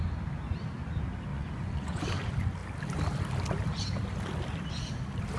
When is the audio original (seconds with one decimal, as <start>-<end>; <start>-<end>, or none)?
0.0-1.3; 2.0-5.4